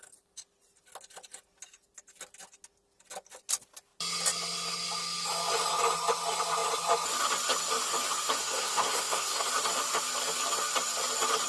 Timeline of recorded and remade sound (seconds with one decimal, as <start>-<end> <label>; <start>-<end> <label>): 0.0-8.4 recorded; 8.4-9.5 remade; 9.5-11.5 recorded